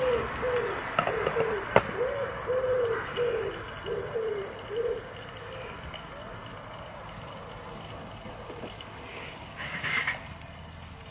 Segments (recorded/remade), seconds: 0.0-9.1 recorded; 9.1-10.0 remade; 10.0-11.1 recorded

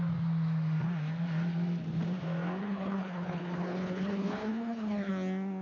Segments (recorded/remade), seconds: 0.0-2.6 recorded; 2.6-5.1 remade; 5.1-5.6 recorded

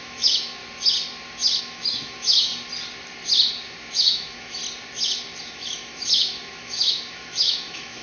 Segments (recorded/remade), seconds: 0.0-0.6 remade; 0.6-1.6 recorded; 1.6-2.5 remade; 2.5-3.9 recorded; 3.9-4.6 remade; 4.6-5.4 recorded; 5.4-8.0 remade

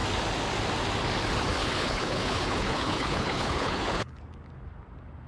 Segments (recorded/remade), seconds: 0.0-1.6 recorded; 1.6-4.2 remade; 4.2-5.3 recorded